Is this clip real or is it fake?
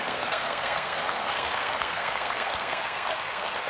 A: fake